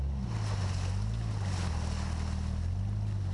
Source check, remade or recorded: recorded